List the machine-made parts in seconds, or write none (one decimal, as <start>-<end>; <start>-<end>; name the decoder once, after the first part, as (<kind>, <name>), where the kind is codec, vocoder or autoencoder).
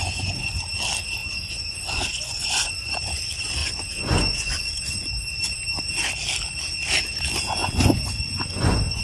0.0-0.6 (vocoder, Vocos); 1.2-3.0; 3.6-4.8; 7.6-9.0